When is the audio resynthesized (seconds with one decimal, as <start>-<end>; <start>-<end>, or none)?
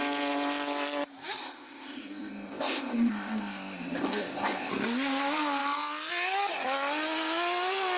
1.4-4.7